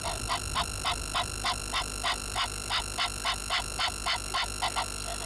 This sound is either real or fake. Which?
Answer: real